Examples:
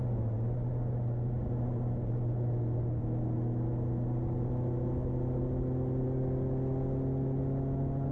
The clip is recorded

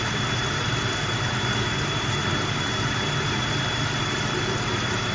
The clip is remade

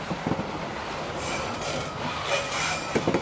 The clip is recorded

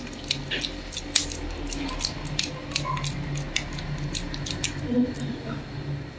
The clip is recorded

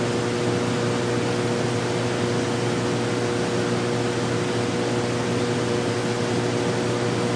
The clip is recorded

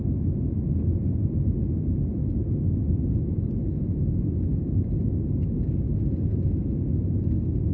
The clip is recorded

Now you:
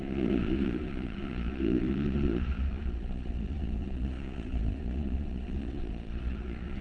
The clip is remade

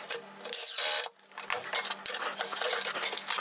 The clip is recorded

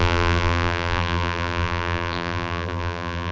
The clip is remade